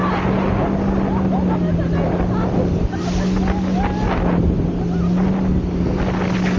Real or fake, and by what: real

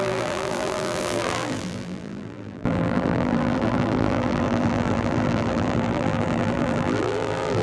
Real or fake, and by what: fake, vocoder, BigVGAN v2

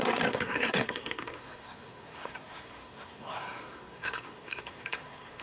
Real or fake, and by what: fake, codec, SNAC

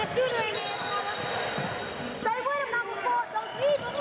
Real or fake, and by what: real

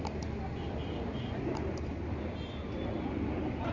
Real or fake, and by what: real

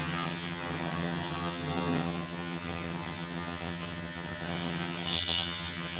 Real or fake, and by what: fake, vocoder, HiFi-GAN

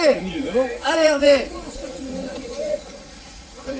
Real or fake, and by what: fake, vocoder, Vocos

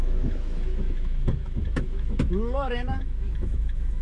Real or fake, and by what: fake, autoencoder, DAC-VAE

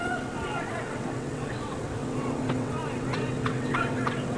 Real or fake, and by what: fake, vocoder, WaveNeXt